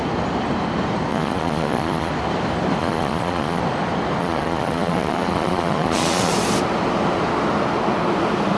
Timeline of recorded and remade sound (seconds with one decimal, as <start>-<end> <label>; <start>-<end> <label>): 0.0-1.1 recorded; 1.1-2.1 remade; 2.1-2.8 recorded; 2.8-3.6 remade; 3.6-4.2 recorded; 4.2-6.3 remade; 6.3-8.6 recorded